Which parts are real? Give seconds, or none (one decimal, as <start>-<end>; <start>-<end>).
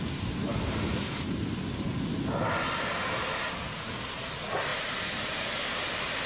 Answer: 0.0-6.3